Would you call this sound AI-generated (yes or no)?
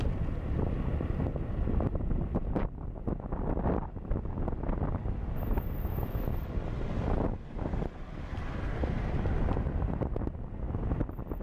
no